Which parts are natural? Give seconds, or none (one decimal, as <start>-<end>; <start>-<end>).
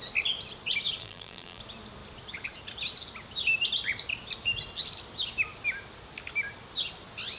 0.0-1.0; 1.6-7.4